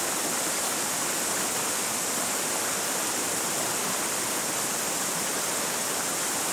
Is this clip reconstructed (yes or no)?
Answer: no